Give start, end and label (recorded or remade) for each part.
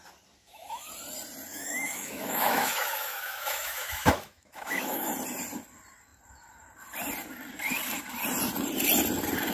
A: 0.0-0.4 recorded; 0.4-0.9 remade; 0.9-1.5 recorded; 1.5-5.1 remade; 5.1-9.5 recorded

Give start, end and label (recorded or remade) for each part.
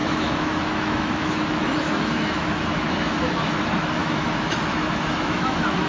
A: 0.0-5.9 remade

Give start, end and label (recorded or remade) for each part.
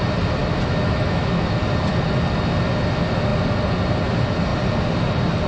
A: 0.0-0.4 recorded; 0.4-1.6 remade; 1.6-5.5 recorded